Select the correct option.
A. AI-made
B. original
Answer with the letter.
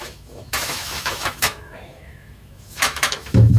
A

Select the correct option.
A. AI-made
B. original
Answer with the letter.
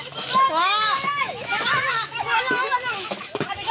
A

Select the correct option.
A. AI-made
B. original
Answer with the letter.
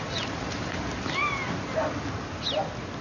B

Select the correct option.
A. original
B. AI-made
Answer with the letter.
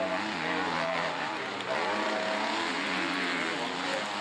A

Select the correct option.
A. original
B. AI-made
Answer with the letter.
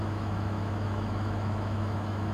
B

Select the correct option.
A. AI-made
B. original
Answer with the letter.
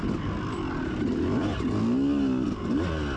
B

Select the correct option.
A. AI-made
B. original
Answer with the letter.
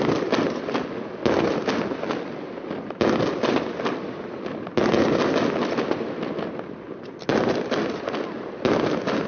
B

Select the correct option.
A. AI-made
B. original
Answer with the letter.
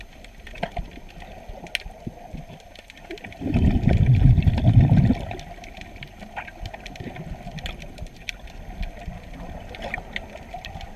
B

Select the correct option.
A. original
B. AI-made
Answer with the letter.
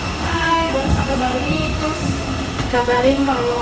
B